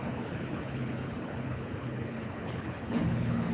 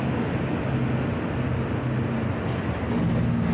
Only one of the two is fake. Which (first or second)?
first